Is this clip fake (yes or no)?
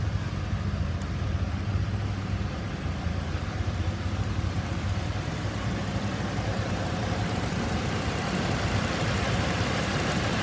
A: yes